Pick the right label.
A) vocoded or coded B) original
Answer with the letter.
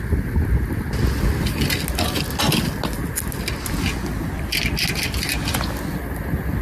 B